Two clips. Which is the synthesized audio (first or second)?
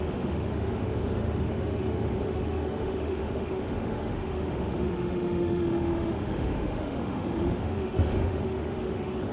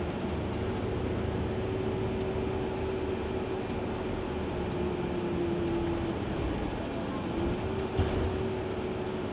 first